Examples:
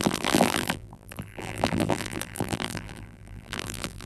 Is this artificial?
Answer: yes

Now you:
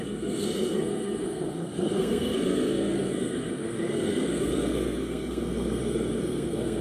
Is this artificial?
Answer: yes